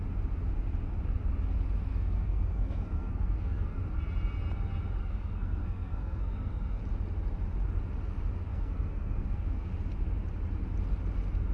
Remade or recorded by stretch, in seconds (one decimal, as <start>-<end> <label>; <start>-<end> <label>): 0.0-1.9 recorded; 1.9-3.8 remade; 3.8-5.0 recorded; 5.0-6.8 remade; 6.8-8.5 recorded; 8.5-9.7 remade; 9.7-11.5 recorded